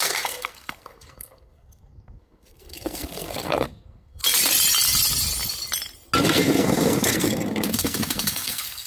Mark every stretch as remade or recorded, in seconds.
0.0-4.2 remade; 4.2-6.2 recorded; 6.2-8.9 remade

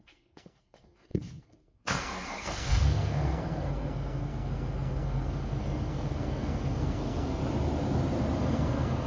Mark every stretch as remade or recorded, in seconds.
0.0-7.4 remade; 7.4-8.4 recorded; 8.4-9.1 remade

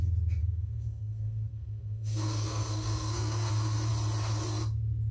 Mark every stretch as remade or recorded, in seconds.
0.0-0.4 recorded; 0.4-3.5 remade; 3.5-5.1 recorded